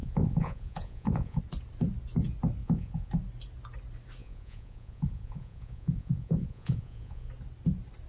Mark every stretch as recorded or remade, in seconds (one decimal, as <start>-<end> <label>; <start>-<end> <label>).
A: 0.0-1.4 remade; 1.4-2.6 recorded; 2.6-3.1 remade; 3.1-4.2 recorded; 4.2-7.3 remade; 7.3-8.1 recorded